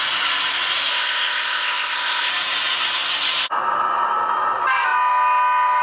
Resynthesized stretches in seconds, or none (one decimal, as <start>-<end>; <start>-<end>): 0.9-2.3